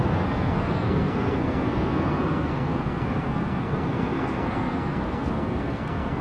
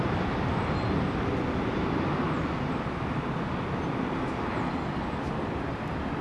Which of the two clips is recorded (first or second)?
second